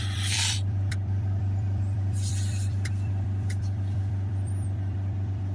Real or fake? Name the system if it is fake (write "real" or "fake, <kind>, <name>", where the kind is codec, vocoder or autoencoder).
fake, vocoder, BigVGAN v2